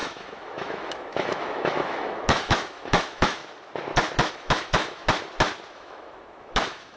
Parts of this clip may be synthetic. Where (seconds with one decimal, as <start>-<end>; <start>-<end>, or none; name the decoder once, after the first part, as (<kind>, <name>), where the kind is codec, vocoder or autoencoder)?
0.0-3.4 (autoencoder, DAC-VAE); 4.3-5.0; 5.7-7.0